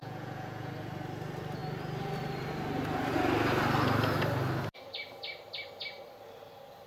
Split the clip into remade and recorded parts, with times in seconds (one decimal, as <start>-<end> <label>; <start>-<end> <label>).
0.0-0.7 remade; 0.7-6.9 recorded